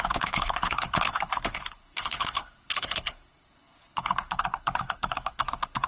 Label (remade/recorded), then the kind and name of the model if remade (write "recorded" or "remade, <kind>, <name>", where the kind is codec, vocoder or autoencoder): remade, codec, HILCodec